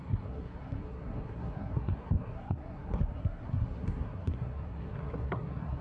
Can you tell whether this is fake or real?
fake